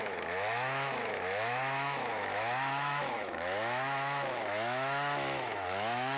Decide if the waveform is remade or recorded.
remade